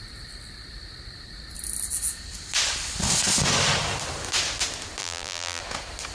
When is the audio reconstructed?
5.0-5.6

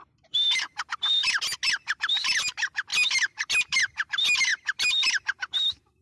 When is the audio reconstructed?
2.9-3.8; 4.5-5.2

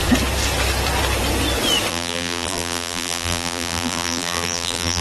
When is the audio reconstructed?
1.9-5.0

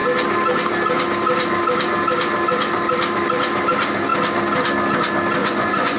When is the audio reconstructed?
5.4-6.0

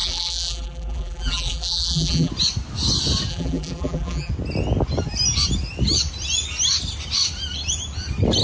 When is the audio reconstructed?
0.0-2.3; 3.3-4.3

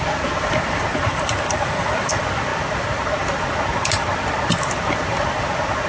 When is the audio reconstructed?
0.9-2.1